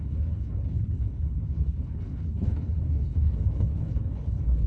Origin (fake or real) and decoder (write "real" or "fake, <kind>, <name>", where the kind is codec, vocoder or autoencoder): fake, codec, HILCodec